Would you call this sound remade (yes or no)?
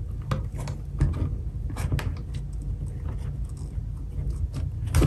no